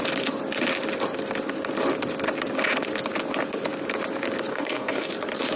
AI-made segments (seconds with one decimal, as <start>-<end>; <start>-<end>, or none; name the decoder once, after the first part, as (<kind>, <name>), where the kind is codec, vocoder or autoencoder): 4.5-5.1 (codec, SNAC)